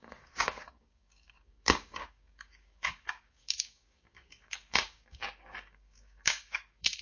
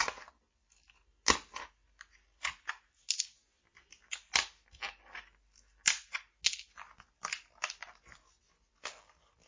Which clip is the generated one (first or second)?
first